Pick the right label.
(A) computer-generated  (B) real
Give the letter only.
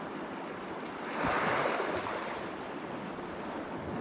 B